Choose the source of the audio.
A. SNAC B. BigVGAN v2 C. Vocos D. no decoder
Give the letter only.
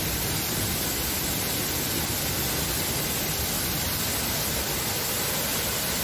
D